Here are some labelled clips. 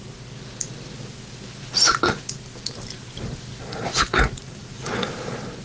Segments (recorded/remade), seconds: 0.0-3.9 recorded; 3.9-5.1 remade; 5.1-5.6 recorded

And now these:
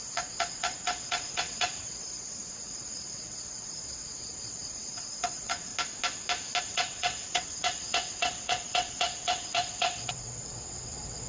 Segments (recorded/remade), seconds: 0.0-5.7 remade; 5.7-6.6 recorded; 6.6-11.3 remade